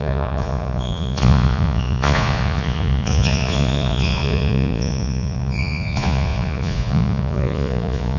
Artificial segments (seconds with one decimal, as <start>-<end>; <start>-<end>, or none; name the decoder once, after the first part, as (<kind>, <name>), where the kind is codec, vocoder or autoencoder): 0.0-8.2 (vocoder, Vocos)